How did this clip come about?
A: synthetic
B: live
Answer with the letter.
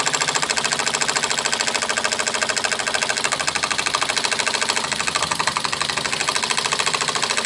B